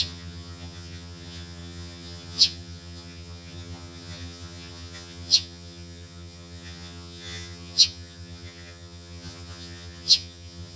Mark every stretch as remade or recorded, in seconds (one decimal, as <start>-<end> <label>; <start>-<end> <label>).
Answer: 0.0-10.8 remade